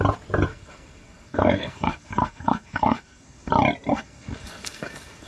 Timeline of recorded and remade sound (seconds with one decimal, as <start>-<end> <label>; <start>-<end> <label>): 0.0-0.5 recorded; 0.5-3.5 remade; 3.5-3.9 recorded; 3.9-5.3 remade